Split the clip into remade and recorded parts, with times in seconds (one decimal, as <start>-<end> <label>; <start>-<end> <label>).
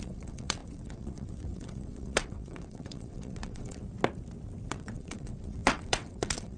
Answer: 0.0-3.8 remade; 3.8-4.7 recorded; 4.7-6.6 remade